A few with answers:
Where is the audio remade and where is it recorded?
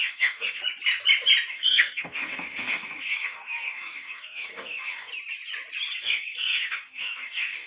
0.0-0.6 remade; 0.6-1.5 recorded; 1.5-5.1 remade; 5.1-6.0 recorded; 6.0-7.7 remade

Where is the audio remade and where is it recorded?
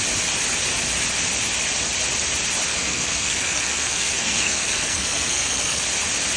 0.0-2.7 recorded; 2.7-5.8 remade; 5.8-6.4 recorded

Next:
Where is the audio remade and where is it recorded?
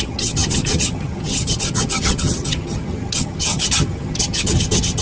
0.0-5.0 remade